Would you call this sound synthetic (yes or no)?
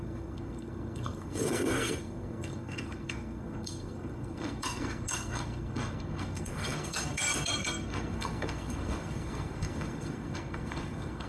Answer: yes